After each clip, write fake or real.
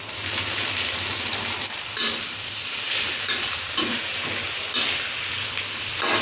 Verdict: real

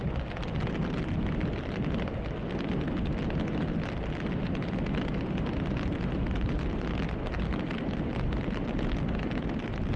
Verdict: real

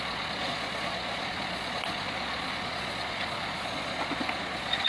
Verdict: fake